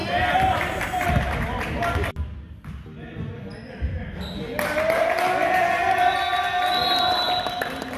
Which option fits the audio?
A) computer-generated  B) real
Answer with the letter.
B